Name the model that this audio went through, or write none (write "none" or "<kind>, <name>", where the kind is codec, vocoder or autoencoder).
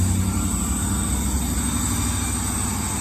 none